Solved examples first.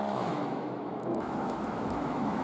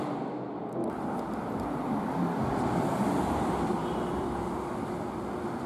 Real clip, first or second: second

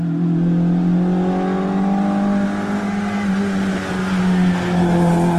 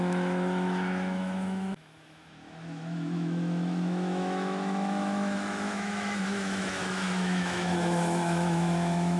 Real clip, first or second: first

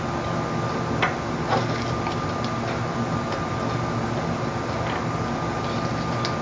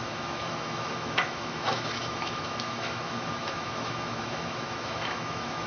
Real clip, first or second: first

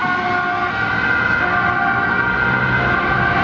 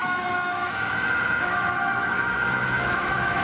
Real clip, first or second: first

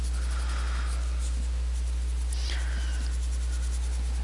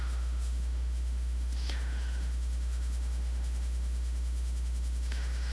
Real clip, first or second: first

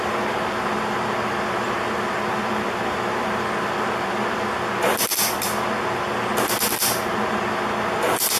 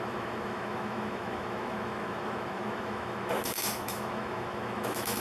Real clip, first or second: first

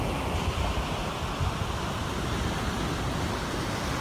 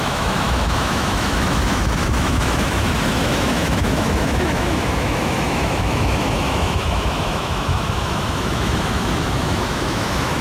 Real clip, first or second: first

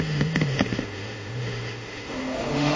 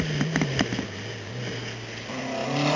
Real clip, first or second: second